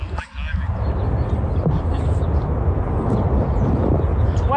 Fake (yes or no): no